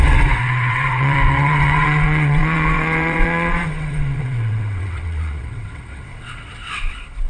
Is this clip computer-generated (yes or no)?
yes